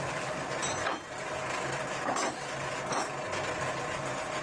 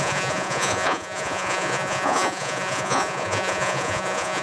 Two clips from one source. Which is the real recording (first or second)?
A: first